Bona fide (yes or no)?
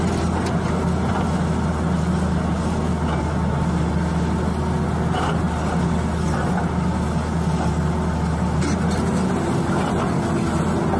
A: yes